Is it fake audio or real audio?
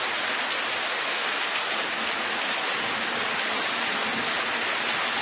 real